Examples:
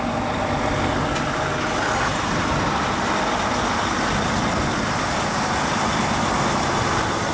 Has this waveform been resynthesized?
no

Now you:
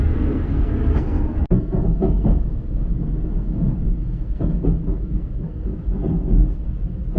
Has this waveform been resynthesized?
yes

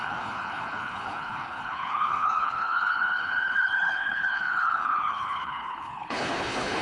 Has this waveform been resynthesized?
yes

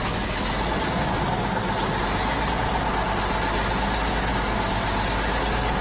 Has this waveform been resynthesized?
no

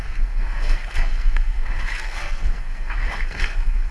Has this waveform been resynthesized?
yes